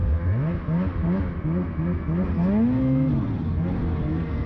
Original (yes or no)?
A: yes